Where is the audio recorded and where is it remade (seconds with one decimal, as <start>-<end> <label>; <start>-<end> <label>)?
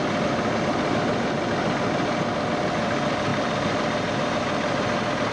0.0-5.3 recorded